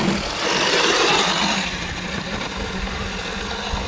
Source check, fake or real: real